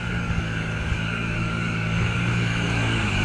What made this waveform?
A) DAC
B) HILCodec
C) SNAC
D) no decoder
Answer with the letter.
A